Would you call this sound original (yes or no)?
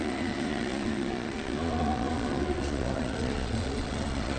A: no